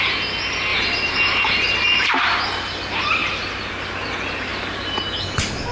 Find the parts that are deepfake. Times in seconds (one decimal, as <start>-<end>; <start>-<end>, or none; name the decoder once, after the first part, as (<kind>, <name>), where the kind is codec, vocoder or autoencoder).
0.7-2.1 (vocoder, BigVGAN v2); 3.2-3.7